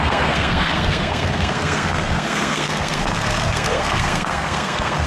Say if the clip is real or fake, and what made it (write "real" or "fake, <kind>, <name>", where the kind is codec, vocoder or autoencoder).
fake, codec, SNAC